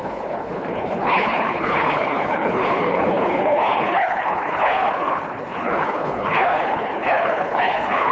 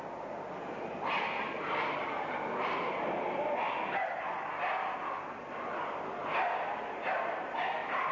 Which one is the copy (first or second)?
first